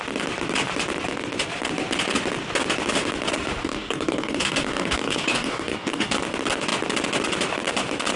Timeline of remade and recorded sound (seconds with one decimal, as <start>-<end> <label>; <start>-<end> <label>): 0.0-3.6 recorded; 3.6-6.1 remade; 6.1-8.2 recorded